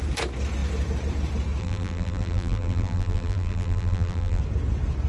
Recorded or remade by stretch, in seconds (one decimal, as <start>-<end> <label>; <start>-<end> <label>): 0.0-1.6 recorded; 1.6-4.4 remade; 4.4-5.1 recorded